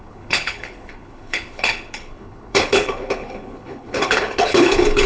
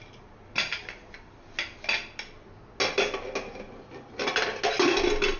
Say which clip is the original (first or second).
second